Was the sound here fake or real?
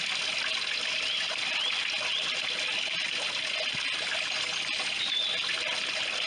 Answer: real